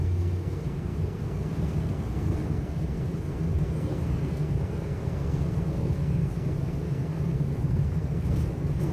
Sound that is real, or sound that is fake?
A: fake